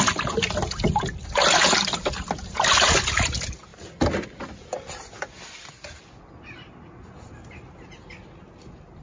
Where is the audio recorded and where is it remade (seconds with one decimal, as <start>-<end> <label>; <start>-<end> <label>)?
0.0-9.0 recorded